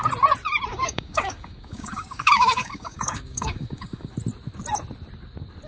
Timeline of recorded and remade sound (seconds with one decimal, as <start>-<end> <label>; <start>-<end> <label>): 0.0-0.7 recorded; 0.7-4.1 remade; 4.1-5.7 recorded